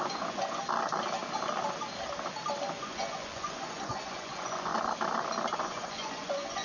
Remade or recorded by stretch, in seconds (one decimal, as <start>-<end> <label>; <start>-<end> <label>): 0.0-0.6 remade; 0.6-2.8 recorded; 2.8-4.7 remade; 4.7-5.6 recorded; 5.6-6.6 remade